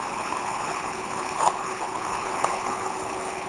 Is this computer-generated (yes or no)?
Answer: yes